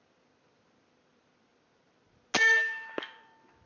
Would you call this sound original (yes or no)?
yes